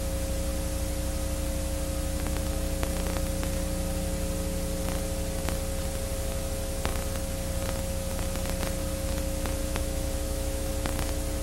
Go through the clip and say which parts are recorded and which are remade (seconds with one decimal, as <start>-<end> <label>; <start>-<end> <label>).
0.0-9.6 recorded; 9.6-10.7 remade; 10.7-11.4 recorded